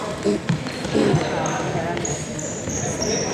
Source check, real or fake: fake